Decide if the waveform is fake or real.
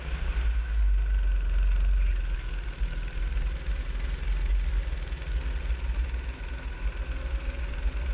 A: real